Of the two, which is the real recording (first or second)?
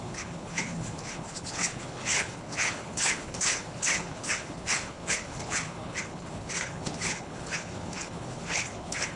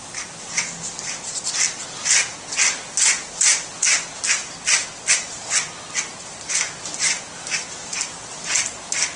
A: second